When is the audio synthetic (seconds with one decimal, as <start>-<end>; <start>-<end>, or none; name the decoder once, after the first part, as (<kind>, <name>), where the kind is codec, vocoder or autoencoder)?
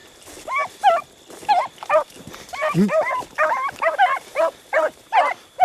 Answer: 1.9-5.6 (vocoder, BigVGAN v2)